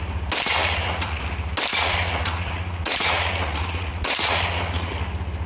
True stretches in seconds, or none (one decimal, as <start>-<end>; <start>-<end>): 0.0-0.6; 1.2-1.7; 4.9-5.5